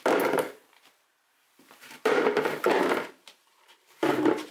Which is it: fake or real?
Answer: fake